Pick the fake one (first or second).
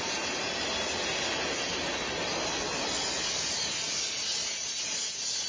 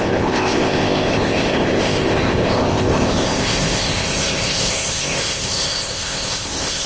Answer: second